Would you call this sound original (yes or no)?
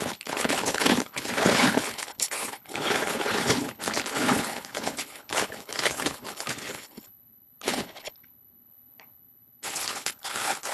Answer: no